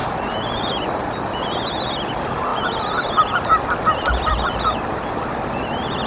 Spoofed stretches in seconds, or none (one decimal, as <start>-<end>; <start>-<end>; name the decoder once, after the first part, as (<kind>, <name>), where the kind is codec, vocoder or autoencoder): 0.0-0.7 (vocoder, BigVGAN v2); 4.3-5.2